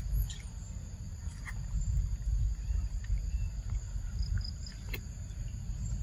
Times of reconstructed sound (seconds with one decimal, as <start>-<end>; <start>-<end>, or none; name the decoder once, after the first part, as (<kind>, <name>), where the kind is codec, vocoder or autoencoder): 1.1-4.7 (vocoder, BigVGAN v2)